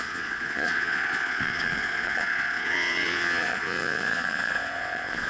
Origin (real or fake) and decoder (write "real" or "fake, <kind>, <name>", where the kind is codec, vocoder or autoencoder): fake, vocoder, Vocos